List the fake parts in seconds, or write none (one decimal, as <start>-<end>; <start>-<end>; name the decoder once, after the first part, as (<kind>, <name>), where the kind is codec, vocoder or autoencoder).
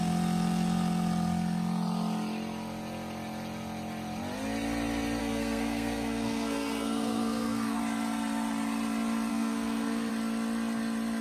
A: 5.2-7.8 (codec, SNAC); 9.3-10.1